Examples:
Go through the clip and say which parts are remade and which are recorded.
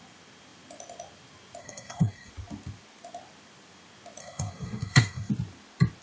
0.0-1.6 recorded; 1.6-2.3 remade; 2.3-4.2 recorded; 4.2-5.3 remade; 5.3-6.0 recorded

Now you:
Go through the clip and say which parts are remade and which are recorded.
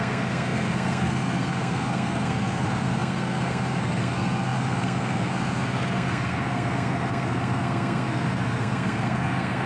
0.0-9.7 remade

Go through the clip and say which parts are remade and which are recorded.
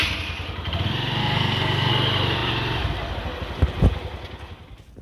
0.0-1.2 recorded; 1.2-1.9 remade; 1.9-5.0 recorded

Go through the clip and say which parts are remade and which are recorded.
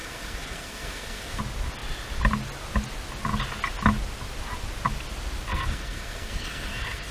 0.0-1.4 remade; 1.4-5.5 recorded; 5.5-7.1 remade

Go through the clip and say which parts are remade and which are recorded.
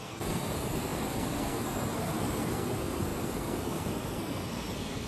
0.0-5.1 remade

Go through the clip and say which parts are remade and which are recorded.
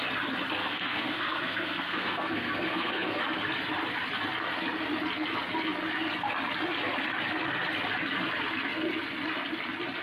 0.0-0.6 recorded; 0.6-3.2 remade; 3.2-10.0 recorded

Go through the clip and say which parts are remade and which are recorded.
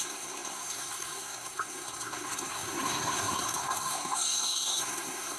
0.0-5.4 remade